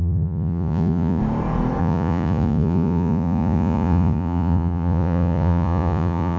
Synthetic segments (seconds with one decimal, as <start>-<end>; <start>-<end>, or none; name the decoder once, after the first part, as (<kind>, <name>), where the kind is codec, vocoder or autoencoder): 0.0-1.2 (vocoder, Vocos); 1.8-6.4